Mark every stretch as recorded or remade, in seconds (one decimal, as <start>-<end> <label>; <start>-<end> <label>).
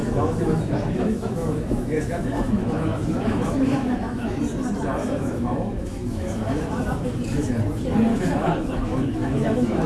0.0-4.4 remade; 4.4-5.0 recorded; 5.0-7.5 remade; 7.5-8.1 recorded; 8.1-9.9 remade